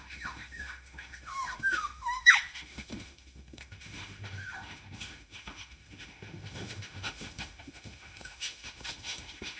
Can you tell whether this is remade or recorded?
remade